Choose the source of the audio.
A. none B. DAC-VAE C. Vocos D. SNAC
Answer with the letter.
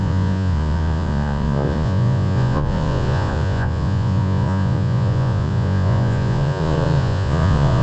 C